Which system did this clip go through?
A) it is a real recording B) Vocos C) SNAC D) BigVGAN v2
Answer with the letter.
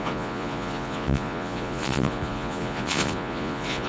B